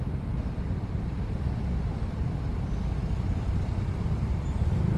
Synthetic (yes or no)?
no